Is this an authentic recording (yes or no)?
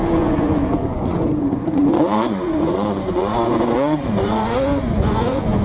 no